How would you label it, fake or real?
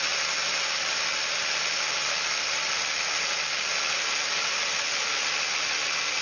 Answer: real